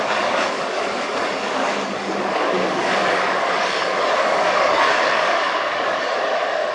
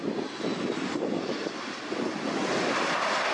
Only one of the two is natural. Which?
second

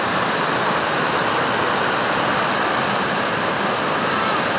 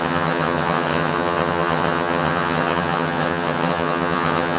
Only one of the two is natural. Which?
first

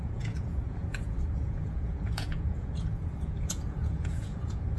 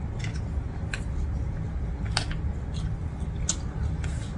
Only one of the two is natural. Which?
second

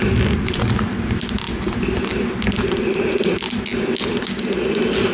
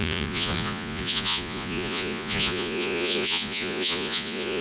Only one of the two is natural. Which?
first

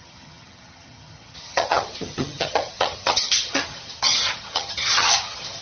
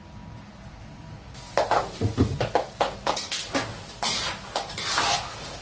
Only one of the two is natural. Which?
second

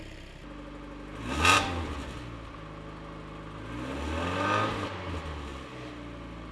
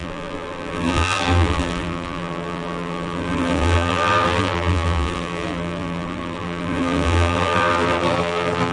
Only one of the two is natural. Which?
first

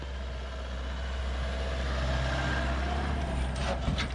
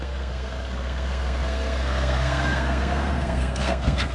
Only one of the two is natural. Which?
first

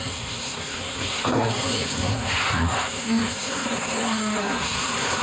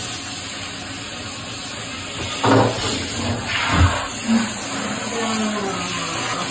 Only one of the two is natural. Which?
second